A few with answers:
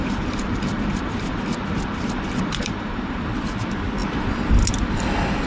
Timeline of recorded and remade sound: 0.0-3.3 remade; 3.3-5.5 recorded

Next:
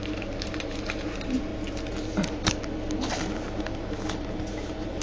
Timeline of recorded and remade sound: 0.0-1.5 remade; 1.5-4.5 recorded; 4.5-5.0 remade

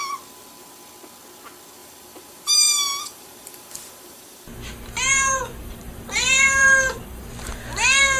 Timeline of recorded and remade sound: 0.0-1.8 recorded; 1.8-4.4 remade; 4.4-5.1 recorded; 5.1-7.2 remade; 7.2-8.2 recorded

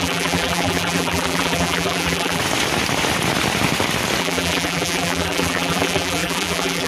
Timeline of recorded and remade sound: 0.0-2.4 remade; 2.4-4.2 recorded; 4.2-6.9 remade

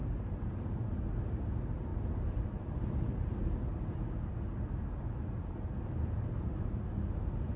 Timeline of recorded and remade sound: 0.0-7.6 recorded

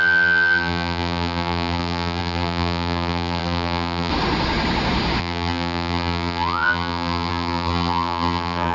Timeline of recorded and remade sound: 0.0-4.1 remade; 4.1-5.2 recorded; 5.2-8.7 remade

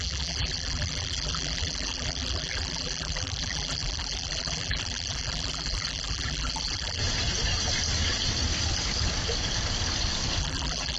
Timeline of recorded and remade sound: 0.0-7.0 remade; 7.0-10.4 recorded; 10.4-11.0 remade